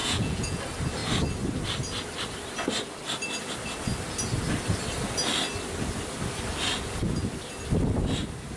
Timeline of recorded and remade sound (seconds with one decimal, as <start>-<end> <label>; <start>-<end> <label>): 0.0-0.6 remade; 0.6-8.6 recorded